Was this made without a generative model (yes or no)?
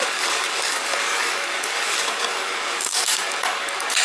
no